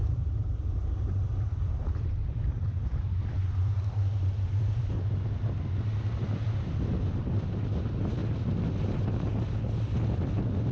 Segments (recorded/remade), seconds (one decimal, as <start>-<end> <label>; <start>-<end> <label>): 0.0-4.6 remade; 4.6-10.7 recorded